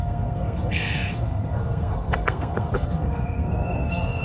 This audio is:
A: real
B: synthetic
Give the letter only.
B